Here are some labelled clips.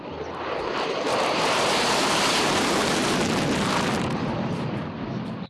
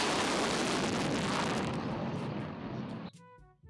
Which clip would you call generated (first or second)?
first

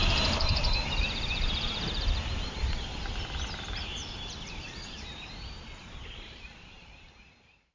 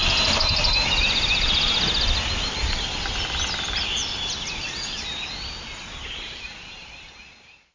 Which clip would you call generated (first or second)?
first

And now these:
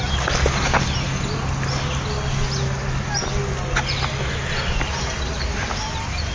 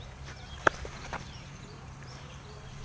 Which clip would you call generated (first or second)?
second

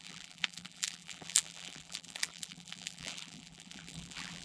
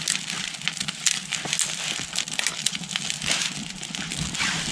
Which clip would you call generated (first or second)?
first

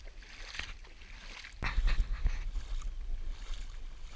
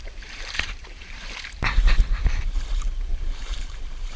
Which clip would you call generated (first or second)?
second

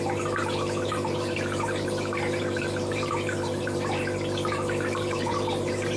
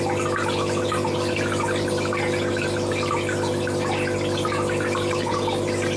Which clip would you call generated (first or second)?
first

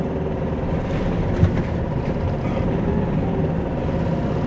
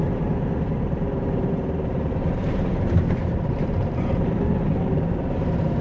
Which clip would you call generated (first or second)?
second